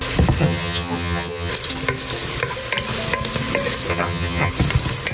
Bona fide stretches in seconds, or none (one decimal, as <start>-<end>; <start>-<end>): 0.0-0.4; 1.5-3.9; 4.5-5.1